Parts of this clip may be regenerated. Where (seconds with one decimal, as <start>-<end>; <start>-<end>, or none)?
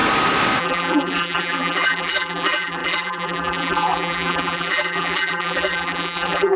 0.6-6.6